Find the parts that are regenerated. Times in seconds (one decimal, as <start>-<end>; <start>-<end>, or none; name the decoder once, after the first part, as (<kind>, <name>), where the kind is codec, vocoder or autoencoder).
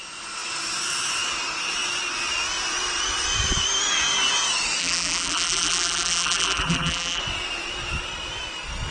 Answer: 4.8-7.2 (vocoder, BigVGAN v2)